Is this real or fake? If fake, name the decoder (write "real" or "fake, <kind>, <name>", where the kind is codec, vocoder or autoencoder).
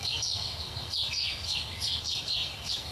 fake, codec, SNAC